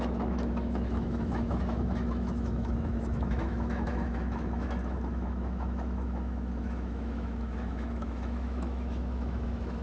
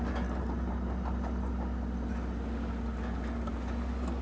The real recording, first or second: second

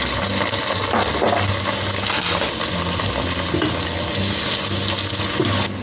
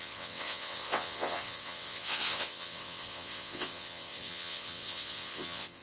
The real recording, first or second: first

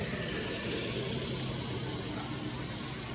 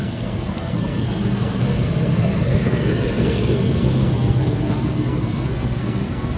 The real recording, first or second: first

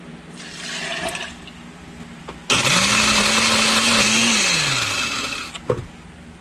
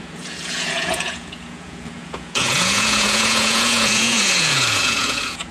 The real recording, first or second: first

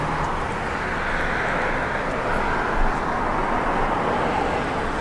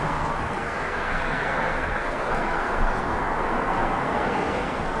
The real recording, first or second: first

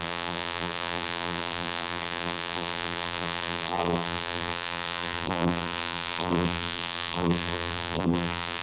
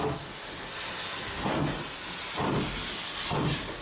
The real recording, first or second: second